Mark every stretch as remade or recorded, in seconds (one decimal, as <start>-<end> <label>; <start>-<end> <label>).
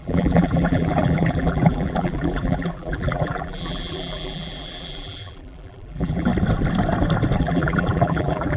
0.0-6.3 remade; 6.3-7.4 recorded; 7.4-8.6 remade